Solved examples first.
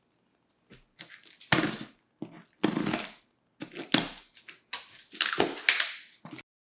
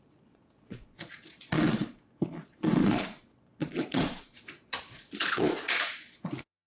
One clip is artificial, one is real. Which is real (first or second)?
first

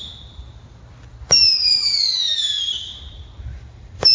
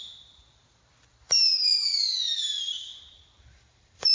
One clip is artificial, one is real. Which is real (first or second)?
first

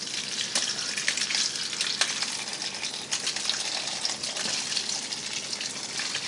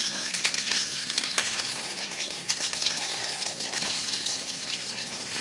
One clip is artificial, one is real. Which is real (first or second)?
first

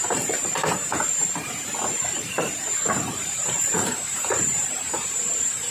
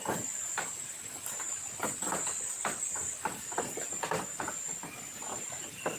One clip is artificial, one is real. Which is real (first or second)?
second